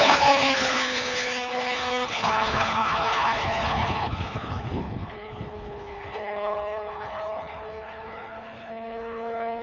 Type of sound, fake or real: fake